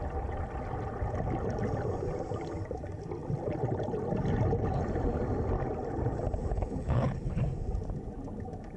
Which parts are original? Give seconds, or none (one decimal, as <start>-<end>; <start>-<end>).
0.0-6.4; 7.4-8.8